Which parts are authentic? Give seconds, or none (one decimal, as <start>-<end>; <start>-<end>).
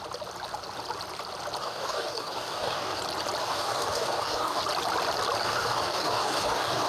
0.0-1.6; 3.0-3.4; 4.6-5.4